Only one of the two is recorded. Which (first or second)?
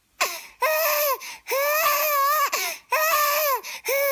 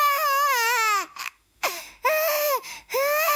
first